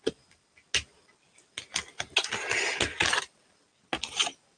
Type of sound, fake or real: real